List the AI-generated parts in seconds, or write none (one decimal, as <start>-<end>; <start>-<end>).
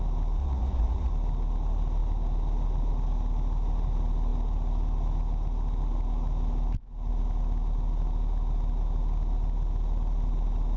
0.4-1.1